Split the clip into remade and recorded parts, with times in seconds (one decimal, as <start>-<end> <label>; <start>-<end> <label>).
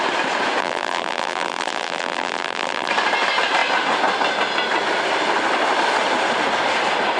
0.0-0.6 recorded; 0.6-2.9 remade; 2.9-7.2 recorded